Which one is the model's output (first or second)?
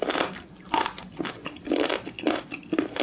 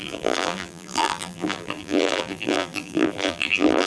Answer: second